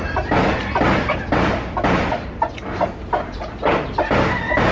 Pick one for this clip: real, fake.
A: real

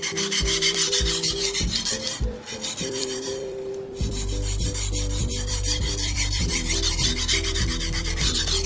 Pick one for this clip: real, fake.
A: fake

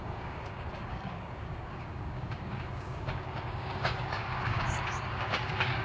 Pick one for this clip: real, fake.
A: fake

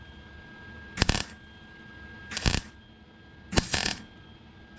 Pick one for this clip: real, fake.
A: real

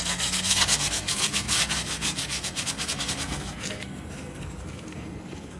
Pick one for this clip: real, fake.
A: fake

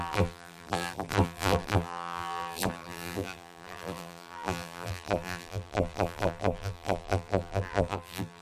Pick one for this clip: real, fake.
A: fake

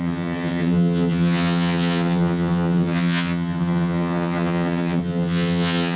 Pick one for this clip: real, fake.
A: fake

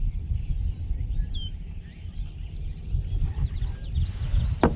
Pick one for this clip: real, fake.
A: real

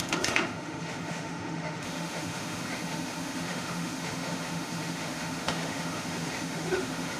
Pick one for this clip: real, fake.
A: fake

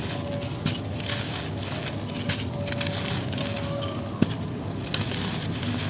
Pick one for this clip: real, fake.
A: real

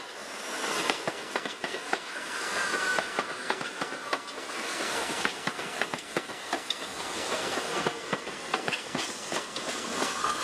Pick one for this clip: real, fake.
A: fake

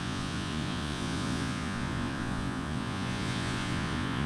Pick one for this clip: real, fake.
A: fake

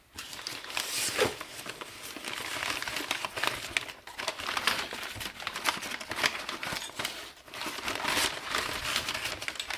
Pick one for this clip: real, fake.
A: real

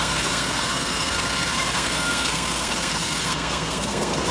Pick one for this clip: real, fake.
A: fake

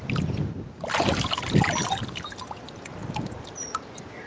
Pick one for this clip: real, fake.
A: real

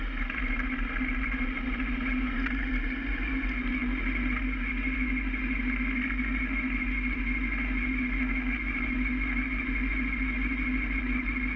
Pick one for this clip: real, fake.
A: real